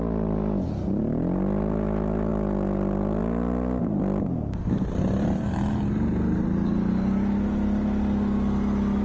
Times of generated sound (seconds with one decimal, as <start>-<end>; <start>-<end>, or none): none